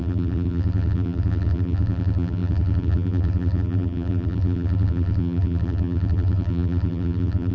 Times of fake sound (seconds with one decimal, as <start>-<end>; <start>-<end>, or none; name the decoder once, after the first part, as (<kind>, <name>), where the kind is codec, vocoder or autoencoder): 0.0-7.5 (vocoder, BigVGAN v2)